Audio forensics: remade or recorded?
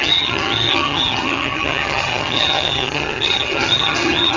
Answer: remade